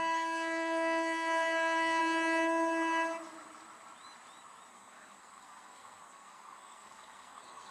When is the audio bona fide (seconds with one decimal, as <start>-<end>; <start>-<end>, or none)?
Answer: 2.0-4.7